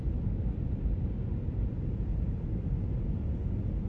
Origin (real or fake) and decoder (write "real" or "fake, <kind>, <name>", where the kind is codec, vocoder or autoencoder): real